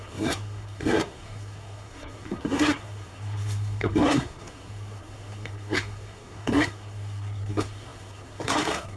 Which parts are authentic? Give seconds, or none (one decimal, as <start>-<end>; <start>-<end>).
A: none

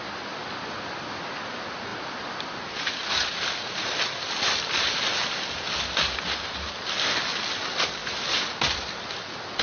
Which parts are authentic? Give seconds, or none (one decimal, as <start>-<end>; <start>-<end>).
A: 0.0-9.6